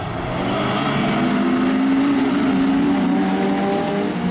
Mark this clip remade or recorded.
recorded